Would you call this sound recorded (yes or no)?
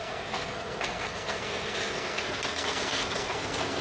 no